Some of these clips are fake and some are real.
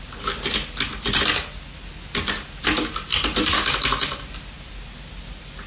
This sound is real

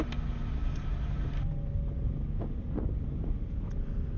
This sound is real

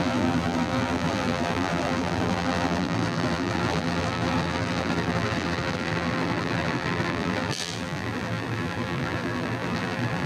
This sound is fake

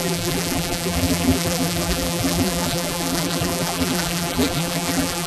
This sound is fake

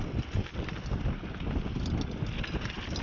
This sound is real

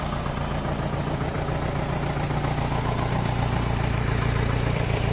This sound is fake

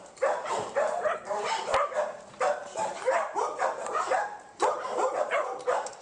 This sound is fake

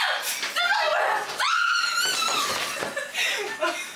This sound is real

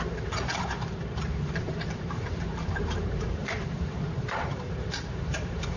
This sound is fake